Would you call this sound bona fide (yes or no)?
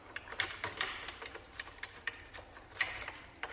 no